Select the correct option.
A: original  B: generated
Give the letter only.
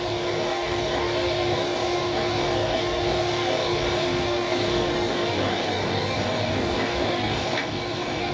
B